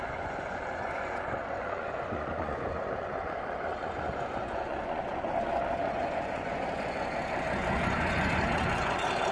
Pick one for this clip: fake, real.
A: fake